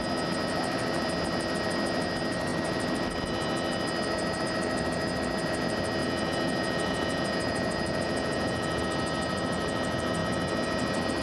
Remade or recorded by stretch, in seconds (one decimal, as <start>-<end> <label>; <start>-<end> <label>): 0.0-6.0 recorded; 6.0-8.8 remade; 8.8-11.2 recorded